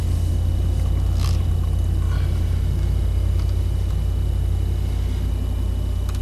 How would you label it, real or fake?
real